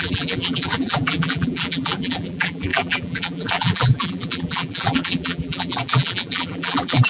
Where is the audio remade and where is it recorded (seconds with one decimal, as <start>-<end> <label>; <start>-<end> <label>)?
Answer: 0.0-7.1 remade